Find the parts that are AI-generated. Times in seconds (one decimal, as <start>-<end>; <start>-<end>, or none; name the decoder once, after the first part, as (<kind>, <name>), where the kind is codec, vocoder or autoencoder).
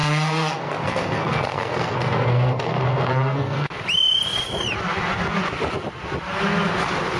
0.0-3.7 (codec, SNAC)